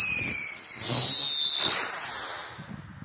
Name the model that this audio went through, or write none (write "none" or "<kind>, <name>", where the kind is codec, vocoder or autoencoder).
none